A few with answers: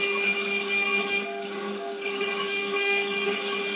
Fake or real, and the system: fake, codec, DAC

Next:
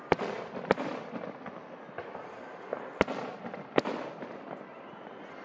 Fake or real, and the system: real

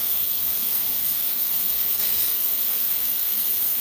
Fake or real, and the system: fake, codec, SNAC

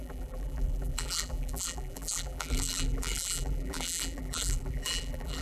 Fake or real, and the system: fake, vocoder, BigVGAN v2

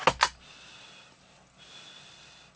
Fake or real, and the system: real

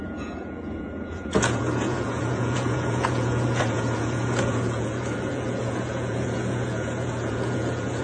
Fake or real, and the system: fake, vocoder, Vocos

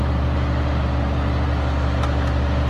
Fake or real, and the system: real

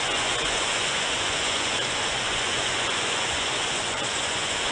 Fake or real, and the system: fake, vocoder, Vocos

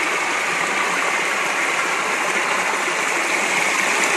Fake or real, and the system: real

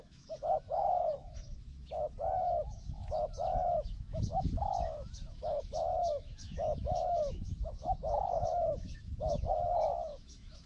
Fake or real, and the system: fake, autoencoder, DAC-VAE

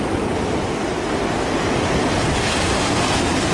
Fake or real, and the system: real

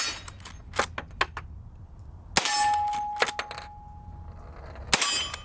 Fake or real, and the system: real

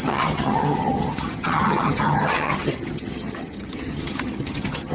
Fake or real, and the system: fake, vocoder, HiFi-GAN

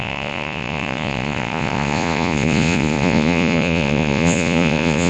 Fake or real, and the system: fake, vocoder, Vocos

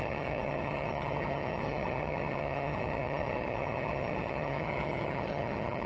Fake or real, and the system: fake, vocoder, HiFi-GAN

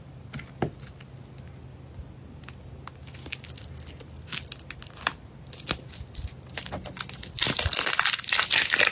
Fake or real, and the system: real